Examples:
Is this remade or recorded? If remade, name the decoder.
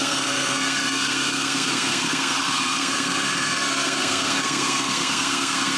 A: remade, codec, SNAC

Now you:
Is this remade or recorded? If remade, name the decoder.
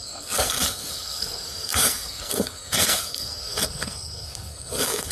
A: remade, codec, SNAC